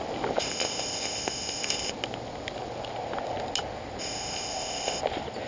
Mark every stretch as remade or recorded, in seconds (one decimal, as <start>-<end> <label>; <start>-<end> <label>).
0.0-0.4 recorded; 0.4-1.9 remade; 1.9-4.0 recorded; 4.0-5.0 remade; 5.0-5.5 recorded